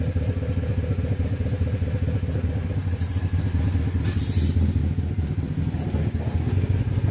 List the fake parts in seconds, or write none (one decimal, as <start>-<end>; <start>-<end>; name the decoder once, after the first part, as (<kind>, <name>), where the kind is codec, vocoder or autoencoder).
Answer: 4.8-5.6 (vocoder, BigVGAN v2)